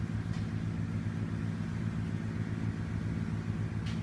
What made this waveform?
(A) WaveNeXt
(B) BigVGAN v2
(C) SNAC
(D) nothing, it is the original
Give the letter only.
D